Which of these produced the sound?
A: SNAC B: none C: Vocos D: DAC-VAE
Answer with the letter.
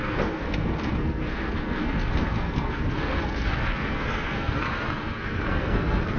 A